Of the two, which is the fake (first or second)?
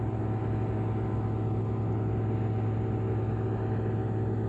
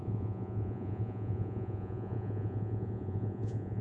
second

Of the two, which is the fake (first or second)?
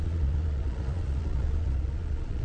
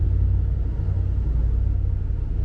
first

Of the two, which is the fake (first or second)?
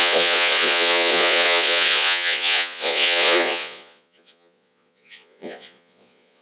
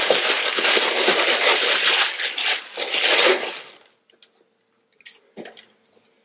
first